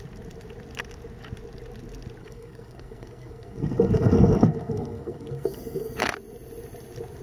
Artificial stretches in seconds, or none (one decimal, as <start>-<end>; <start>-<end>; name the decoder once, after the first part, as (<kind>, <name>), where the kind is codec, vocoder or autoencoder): 2.2-6.0 (codec, SNAC)